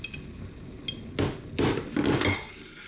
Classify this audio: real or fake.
real